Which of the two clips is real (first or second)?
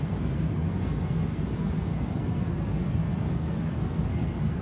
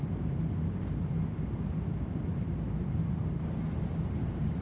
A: second